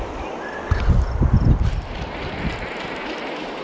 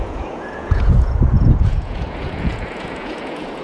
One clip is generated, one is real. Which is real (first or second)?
first